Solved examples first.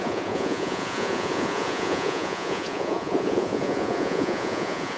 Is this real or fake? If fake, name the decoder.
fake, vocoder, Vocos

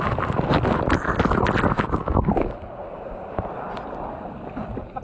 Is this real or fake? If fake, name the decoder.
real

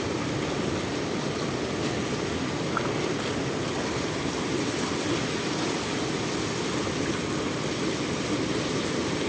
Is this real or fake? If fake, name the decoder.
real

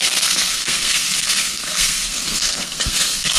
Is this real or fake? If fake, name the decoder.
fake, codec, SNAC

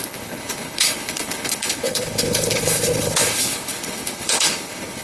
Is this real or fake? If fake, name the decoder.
fake, codec, HILCodec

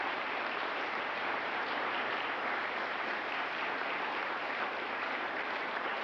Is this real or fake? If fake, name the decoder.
fake, vocoder, BigVGAN v2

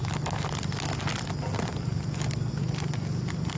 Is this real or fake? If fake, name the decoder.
real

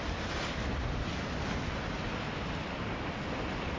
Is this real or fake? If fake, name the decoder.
fake, vocoder, BigVGAN v2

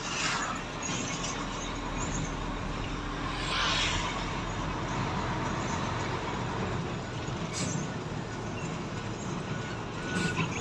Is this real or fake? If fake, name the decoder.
real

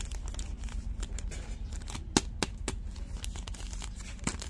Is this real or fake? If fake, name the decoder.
real